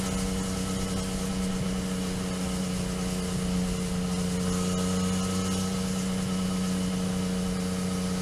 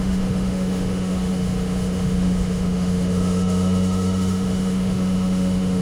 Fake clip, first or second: second